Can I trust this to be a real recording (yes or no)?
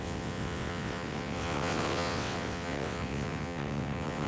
no